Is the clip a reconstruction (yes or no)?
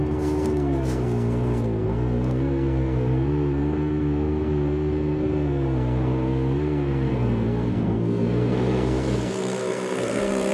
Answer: yes